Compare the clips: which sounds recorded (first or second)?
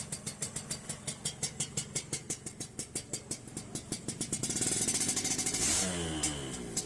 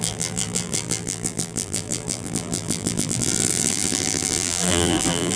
first